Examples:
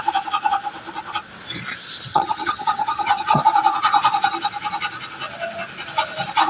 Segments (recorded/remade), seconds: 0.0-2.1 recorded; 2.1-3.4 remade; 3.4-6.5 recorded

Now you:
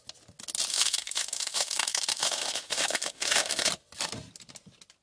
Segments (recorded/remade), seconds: 0.0-0.7 recorded; 0.7-3.7 remade; 3.7-5.0 recorded

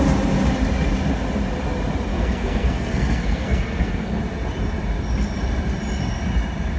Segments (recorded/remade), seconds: 0.0-2.1 recorded; 2.1-4.2 remade; 4.2-6.8 recorded